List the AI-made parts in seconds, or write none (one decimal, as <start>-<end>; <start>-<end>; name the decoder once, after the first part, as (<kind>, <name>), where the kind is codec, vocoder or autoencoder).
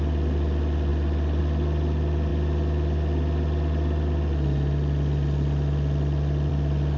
none